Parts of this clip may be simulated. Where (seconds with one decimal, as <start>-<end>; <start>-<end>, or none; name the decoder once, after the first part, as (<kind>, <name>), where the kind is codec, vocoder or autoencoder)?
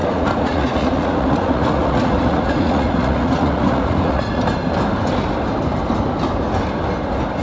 0.0-4.4 (vocoder, Vocos)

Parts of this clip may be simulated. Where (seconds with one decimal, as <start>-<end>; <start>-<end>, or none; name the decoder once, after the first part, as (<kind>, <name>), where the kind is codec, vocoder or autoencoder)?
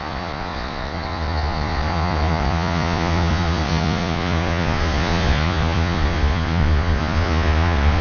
0.0-8.0 (vocoder, Vocos)